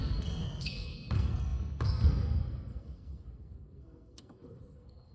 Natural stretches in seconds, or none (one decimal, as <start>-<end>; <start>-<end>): none